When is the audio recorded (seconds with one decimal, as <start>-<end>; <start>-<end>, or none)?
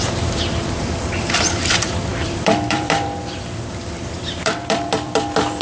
none